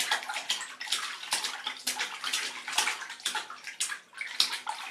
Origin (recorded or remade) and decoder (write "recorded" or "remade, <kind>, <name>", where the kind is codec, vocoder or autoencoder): recorded